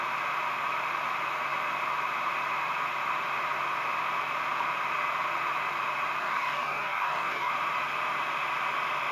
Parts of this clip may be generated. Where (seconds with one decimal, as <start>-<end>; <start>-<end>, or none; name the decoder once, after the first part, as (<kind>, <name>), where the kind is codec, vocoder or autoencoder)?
6.2-7.5 (codec, DAC)